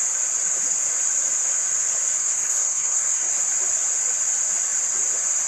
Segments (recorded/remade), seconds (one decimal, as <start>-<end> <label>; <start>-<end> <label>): 0.0-2.2 recorded; 2.2-3.3 remade; 3.3-5.5 recorded